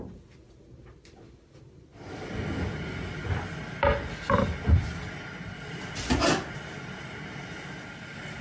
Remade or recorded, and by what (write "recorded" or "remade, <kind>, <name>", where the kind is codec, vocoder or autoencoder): recorded